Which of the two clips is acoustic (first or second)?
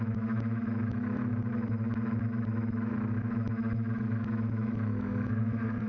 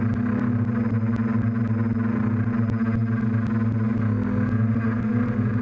second